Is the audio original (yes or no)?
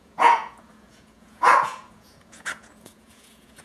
no